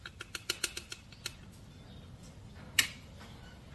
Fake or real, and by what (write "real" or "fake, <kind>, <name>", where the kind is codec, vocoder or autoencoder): real